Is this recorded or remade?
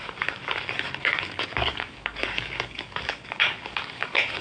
remade